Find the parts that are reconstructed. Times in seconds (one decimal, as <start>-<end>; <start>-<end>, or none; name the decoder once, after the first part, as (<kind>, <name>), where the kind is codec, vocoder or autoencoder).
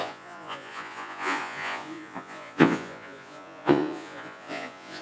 0.0-5.0 (vocoder, Vocos)